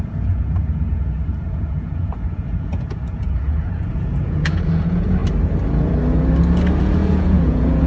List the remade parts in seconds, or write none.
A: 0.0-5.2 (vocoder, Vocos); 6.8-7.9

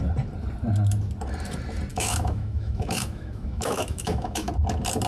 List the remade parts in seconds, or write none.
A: 1.9-4.5 (autoencoder, DAC-VAE)

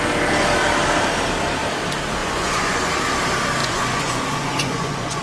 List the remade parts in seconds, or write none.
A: 2.2-2.9 (vocoder, Vocos); 3.6-5.2

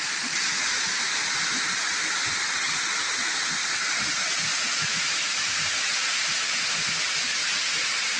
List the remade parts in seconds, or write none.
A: none